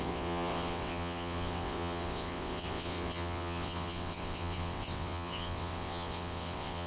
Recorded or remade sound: remade